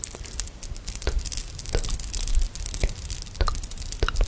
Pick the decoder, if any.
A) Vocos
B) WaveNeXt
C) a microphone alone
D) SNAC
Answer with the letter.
C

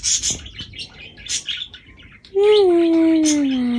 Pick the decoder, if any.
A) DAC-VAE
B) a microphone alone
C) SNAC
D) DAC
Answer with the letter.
B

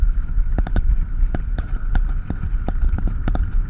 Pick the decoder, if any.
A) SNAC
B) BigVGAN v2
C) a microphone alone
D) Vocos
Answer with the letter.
C